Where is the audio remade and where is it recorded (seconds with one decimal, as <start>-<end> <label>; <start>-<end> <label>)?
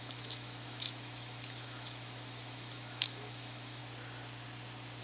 0.0-3.8 remade; 3.8-5.0 recorded